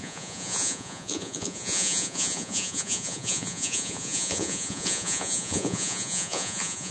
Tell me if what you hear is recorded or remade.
remade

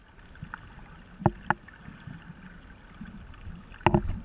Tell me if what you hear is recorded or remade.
recorded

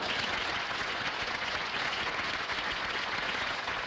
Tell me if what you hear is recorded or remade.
remade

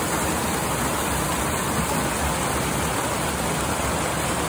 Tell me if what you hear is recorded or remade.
recorded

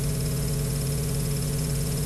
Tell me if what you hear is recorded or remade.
remade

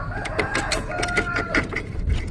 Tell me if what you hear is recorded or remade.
remade